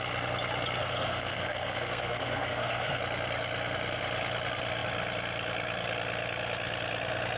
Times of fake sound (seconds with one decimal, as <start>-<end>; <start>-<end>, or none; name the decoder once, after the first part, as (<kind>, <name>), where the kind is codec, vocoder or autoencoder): 0.8-3.0 (codec, SNAC)